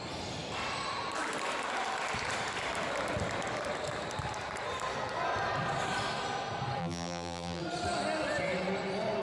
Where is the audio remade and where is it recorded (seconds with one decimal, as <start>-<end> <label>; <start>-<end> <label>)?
0.0-6.8 recorded; 6.8-7.6 remade; 7.6-9.2 recorded